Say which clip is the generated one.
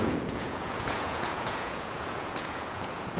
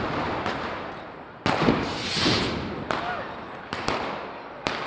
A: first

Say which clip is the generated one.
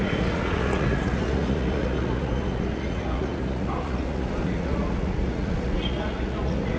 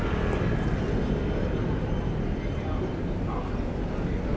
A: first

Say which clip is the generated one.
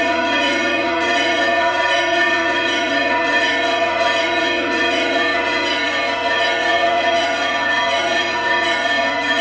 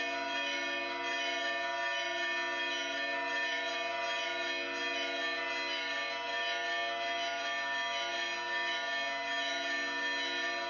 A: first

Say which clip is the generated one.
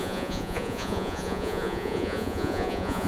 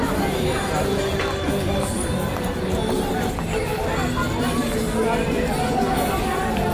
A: first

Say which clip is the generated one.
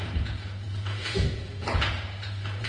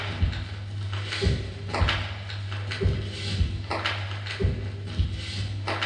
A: first